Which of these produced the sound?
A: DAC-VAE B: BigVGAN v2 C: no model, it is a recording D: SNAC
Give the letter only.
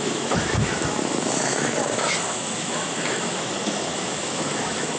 A